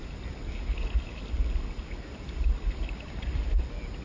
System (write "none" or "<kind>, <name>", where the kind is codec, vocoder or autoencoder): none